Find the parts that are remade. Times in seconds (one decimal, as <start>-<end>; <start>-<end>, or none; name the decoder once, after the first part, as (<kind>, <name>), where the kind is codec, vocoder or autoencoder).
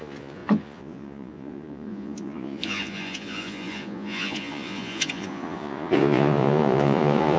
0.0-7.4 (vocoder, Vocos)